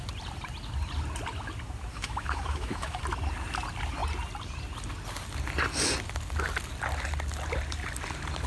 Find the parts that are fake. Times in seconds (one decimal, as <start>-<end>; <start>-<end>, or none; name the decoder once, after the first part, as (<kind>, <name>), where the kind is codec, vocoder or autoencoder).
1.9-3.0 (autoencoder, DAC-VAE)